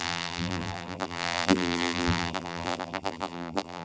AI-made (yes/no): yes